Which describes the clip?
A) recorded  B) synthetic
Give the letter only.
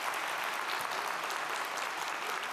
A